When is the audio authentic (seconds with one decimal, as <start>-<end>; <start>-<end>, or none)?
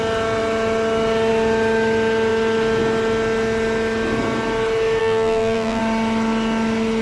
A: 0.0-5.0; 5.8-7.0